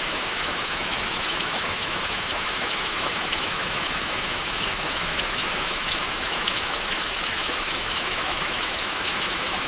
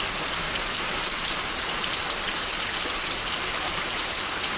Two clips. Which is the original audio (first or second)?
second